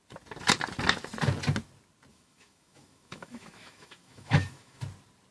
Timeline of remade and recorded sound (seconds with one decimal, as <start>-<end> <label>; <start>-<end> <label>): 0.0-2.1 recorded; 2.1-4.8 remade; 4.8-5.3 recorded